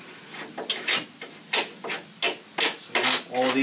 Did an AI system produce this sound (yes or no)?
no